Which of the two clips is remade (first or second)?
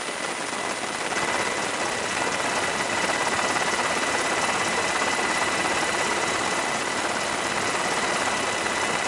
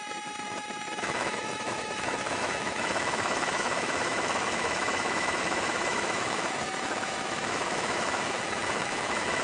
second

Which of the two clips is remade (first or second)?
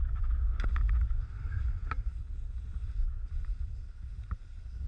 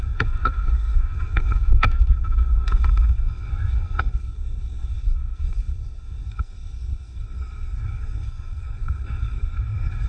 second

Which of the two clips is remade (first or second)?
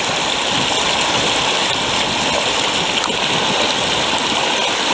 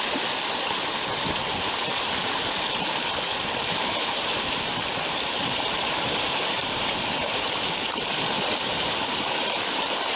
second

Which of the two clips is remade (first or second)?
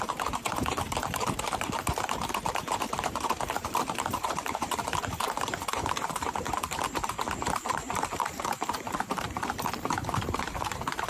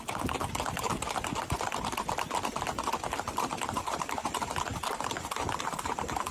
first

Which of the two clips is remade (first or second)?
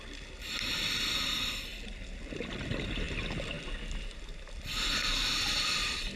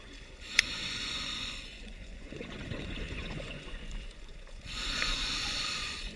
second